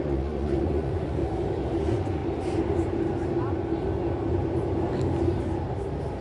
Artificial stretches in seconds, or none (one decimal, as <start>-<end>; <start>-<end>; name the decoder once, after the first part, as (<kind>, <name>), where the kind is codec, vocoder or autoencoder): 0.0-1.2 (vocoder, Vocos); 1.8-2.2